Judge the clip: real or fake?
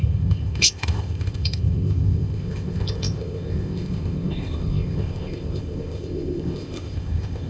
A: fake